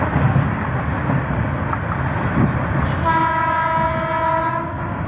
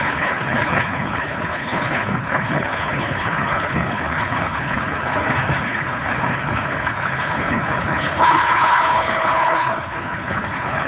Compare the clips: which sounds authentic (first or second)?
first